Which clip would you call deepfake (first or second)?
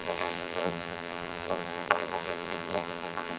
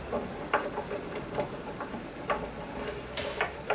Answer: first